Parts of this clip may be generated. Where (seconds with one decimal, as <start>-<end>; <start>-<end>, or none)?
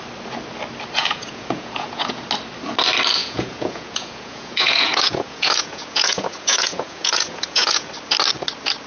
1.0-2.2; 3.2-7.9